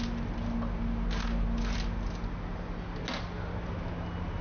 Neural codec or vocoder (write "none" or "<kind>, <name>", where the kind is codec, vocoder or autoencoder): none